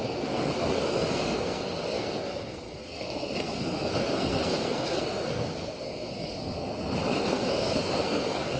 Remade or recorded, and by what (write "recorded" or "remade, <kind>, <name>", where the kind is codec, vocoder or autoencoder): remade, codec, SNAC